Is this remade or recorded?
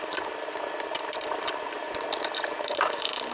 remade